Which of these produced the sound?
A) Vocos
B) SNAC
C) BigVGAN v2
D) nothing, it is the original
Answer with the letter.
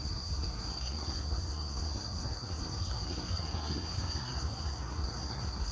B